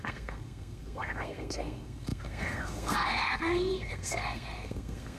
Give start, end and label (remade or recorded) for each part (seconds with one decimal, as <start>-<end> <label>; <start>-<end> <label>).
0.0-5.2 remade